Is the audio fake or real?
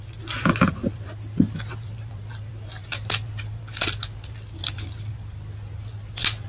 fake